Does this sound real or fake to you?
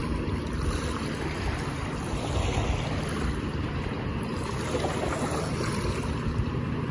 real